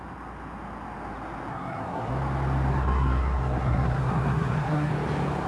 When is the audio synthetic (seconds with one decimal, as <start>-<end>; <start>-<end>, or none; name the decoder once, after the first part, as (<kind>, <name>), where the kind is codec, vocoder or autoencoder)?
1.5-2.1 (codec, SNAC); 2.7-4.9